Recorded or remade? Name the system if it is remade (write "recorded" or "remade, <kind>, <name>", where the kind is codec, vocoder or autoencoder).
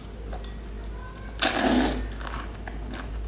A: recorded